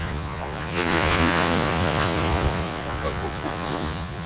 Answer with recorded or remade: remade